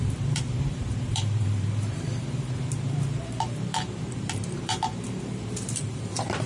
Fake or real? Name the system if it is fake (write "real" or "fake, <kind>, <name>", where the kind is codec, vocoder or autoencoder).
fake, vocoder, BigVGAN v2